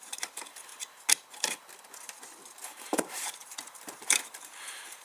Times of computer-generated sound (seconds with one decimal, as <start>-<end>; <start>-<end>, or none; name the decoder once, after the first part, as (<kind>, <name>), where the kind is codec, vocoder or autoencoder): 0.0-0.7 (vocoder, BigVGAN v2); 2.7-5.0